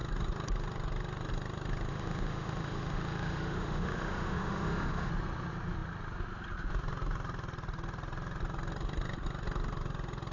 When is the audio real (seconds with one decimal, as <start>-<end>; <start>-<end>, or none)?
0.0-1.9; 5.1-10.3